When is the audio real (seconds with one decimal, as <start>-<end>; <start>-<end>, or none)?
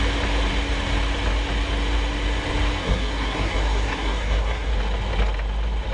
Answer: 0.0-2.8; 4.7-5.9